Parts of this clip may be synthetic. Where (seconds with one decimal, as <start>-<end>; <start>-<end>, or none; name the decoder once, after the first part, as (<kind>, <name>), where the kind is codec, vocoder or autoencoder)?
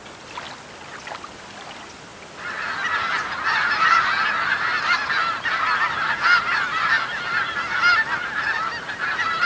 none